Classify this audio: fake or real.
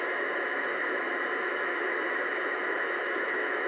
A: fake